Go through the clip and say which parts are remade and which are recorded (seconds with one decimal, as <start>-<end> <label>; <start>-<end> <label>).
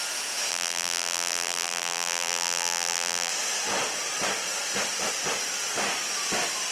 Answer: 0.0-0.5 recorded; 0.5-3.3 remade; 3.3-6.7 recorded